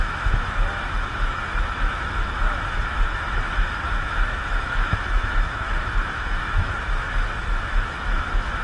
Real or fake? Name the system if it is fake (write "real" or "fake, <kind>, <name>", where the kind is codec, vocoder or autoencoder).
fake, autoencoder, DAC-VAE